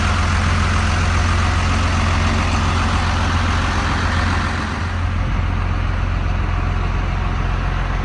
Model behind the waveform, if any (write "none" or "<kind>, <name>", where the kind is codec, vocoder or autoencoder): none